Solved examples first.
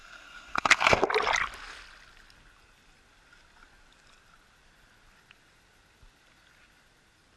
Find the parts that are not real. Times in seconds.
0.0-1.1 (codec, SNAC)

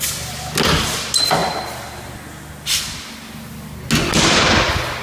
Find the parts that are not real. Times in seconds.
none

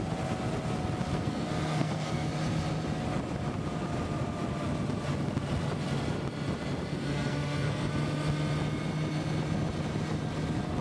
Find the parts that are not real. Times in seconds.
1.1-2.3 (codec, SNAC); 6.9-7.9

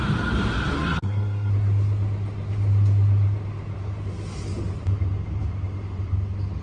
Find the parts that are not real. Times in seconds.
0.7-1.5 (codec, SNAC)

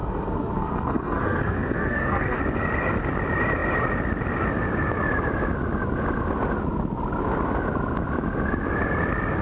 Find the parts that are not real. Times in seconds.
0.0-2.4 (codec, SNAC)

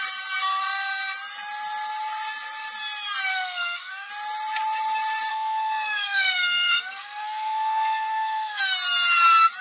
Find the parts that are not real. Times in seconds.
3.3-4.1 (codec, SNAC); 5.3-8.6

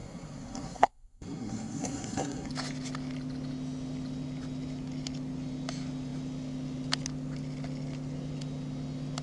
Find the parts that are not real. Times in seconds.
0.0-2.5 (codec, SNAC)

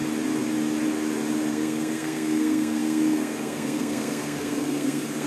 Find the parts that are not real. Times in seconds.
1.5-5.3 (codec, SNAC)